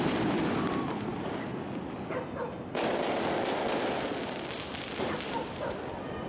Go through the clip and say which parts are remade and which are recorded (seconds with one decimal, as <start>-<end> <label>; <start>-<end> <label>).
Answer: 0.0-1.1 remade; 1.1-4.9 recorded; 4.9-6.3 remade